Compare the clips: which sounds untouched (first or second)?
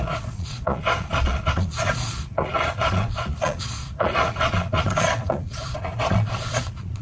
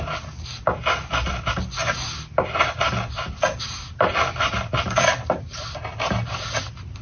second